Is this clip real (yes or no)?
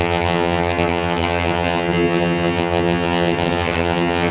no